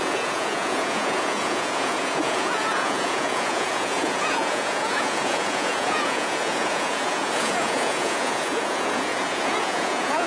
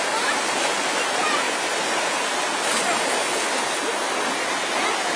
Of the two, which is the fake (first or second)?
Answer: first